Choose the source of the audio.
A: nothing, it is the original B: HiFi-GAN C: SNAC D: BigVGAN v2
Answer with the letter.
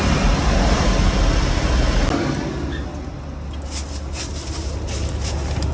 A